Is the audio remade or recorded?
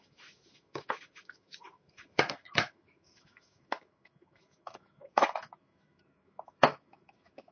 remade